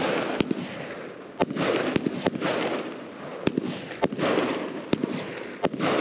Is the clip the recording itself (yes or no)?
yes